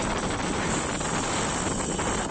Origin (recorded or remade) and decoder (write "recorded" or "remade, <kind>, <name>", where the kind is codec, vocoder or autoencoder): recorded